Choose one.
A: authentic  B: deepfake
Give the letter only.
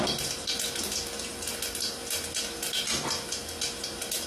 A